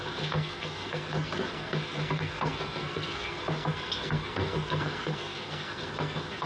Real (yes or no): no